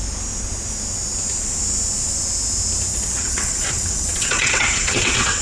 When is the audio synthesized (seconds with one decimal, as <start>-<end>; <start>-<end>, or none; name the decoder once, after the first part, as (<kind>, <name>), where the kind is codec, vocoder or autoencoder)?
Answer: 2.9-5.4 (vocoder, WaveNeXt)